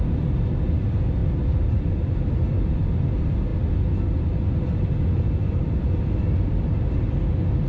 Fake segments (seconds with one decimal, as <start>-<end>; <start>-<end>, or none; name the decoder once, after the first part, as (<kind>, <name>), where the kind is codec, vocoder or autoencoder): none